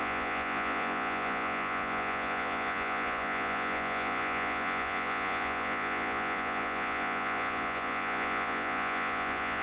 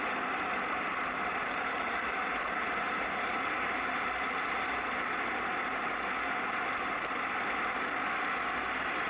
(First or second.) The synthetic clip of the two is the first